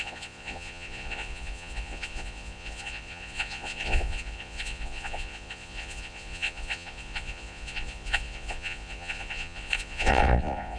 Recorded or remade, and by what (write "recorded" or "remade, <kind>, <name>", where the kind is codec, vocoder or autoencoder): remade, vocoder, Vocos